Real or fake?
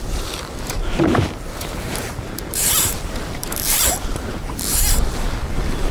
fake